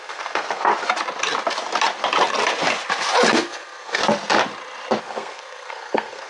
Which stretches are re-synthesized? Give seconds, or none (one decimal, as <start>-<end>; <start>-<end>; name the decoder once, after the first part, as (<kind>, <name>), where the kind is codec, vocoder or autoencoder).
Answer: 0.0-0.7 (codec, SNAC); 3.3-4.0; 5.0-6.3